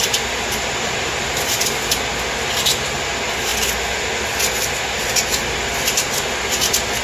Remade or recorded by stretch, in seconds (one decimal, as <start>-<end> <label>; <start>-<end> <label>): 0.0-7.0 recorded